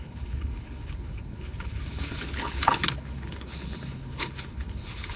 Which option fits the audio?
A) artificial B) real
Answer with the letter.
A